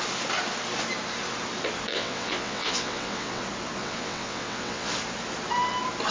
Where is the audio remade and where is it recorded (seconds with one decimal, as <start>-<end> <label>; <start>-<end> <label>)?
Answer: 0.0-1.9 recorded; 1.9-3.4 remade; 3.4-3.8 recorded; 3.8-4.9 remade; 4.9-6.1 recorded